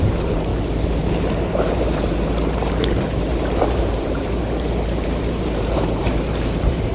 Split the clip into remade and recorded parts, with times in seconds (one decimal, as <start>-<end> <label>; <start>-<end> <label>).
0.0-0.5 remade; 0.5-1.4 recorded; 1.4-6.9 remade